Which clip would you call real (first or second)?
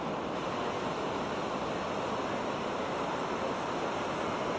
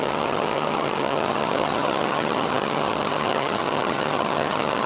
first